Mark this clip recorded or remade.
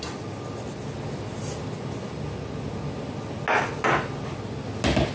recorded